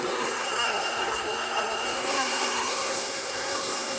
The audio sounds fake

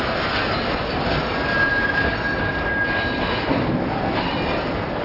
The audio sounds real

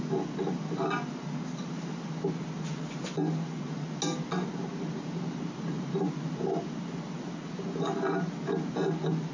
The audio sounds real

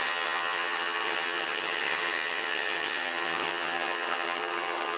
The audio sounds fake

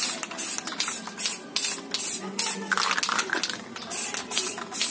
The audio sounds real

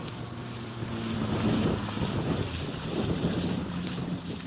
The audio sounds fake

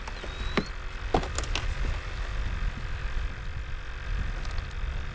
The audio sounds real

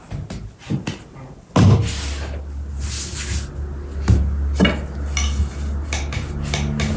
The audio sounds real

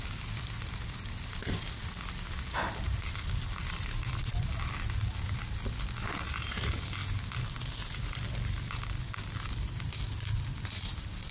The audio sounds real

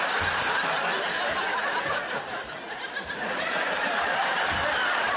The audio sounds real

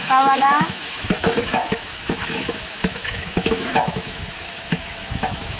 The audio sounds fake